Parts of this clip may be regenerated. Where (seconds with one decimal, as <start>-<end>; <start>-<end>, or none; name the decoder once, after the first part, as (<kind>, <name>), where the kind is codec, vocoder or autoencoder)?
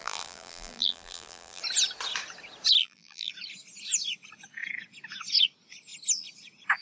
0.0-1.6 (vocoder, BigVGAN v2); 2.8-3.3